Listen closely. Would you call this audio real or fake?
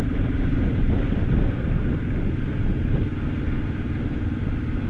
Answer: real